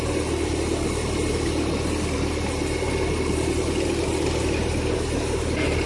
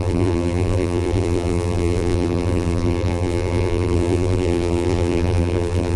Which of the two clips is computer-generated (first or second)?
second